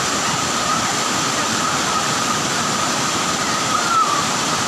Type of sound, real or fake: fake